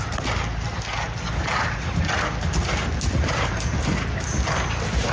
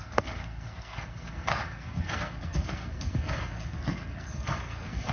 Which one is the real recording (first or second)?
first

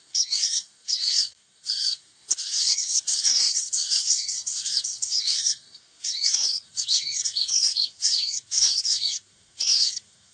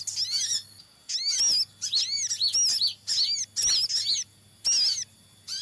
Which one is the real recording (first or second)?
second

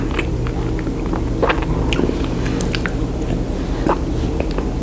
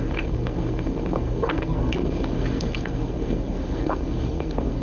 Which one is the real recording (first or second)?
first